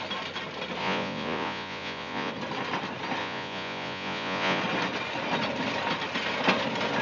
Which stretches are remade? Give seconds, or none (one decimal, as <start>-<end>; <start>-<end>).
0.8-2.3; 3.2-4.6